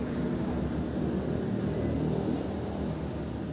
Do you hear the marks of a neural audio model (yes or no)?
no